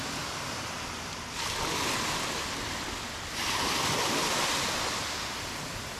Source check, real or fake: real